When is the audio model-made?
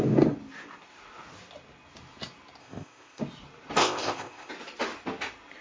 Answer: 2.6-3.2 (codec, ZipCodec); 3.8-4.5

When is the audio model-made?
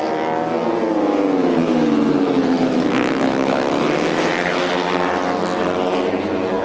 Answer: 1.6-4.7 (autoencoder, DAC-VAE)